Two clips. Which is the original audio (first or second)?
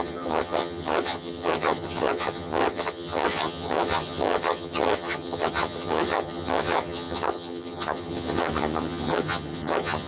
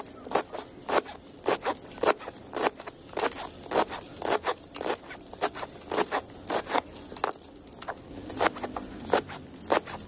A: second